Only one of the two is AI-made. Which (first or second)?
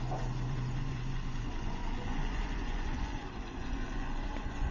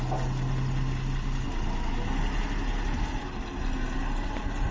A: first